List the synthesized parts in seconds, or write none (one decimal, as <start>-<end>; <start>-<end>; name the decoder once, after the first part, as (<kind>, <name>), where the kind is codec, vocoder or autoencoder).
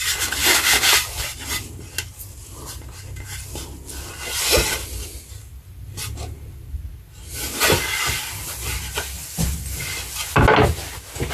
0.4-0.9 (codec, DAC)